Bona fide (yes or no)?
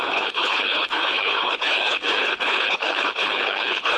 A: no